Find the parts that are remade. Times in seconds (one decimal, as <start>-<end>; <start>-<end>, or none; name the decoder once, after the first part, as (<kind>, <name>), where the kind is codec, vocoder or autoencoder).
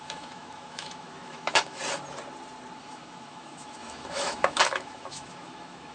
0.0-1.8 (autoencoder, DAC-VAE); 2.8-5.9